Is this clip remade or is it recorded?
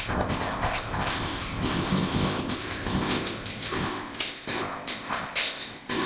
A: remade